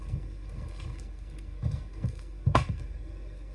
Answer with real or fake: fake